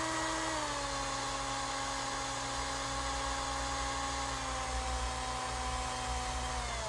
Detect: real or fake real